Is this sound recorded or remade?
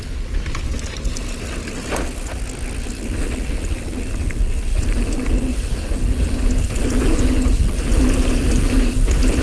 recorded